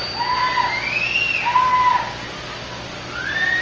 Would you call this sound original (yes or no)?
yes